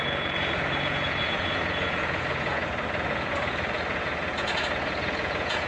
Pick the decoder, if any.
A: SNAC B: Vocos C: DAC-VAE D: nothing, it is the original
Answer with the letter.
B